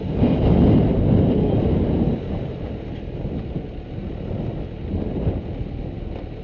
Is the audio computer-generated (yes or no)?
no